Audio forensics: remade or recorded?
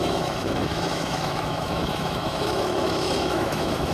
remade